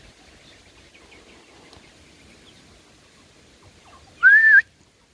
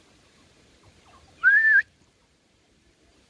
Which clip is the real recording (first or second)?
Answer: first